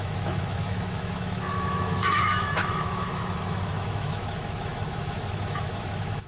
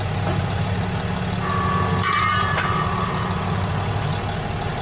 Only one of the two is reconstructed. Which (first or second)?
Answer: first